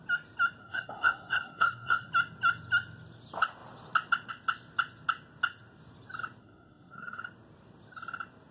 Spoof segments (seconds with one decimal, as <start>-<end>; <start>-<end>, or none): 0.6-2.1; 6.4-7.2